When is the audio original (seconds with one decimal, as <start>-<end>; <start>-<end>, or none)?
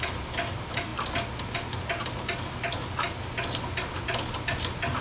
0.0-5.0